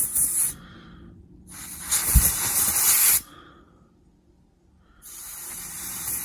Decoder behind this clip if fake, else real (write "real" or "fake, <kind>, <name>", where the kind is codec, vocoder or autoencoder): fake, vocoder, BigVGAN v2